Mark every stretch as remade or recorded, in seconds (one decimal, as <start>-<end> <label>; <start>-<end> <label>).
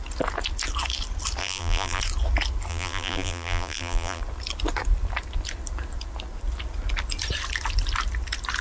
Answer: 0.0-1.4 recorded; 1.4-2.0 remade; 2.0-2.7 recorded; 2.7-4.2 remade; 4.2-8.6 recorded